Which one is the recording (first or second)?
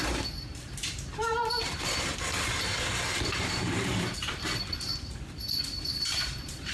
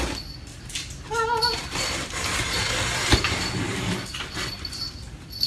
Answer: second